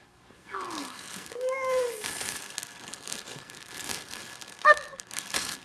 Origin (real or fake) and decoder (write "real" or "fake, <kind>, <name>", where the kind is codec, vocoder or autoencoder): fake, codec, SNAC